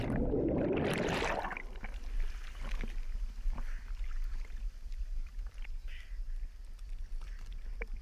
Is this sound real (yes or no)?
yes